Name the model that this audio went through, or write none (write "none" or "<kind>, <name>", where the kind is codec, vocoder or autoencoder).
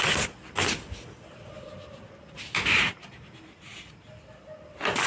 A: none